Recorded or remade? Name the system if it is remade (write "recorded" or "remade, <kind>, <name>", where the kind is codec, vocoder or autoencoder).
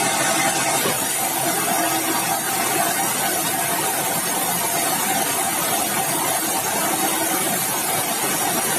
recorded